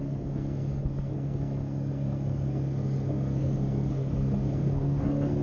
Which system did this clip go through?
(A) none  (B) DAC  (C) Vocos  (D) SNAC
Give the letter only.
D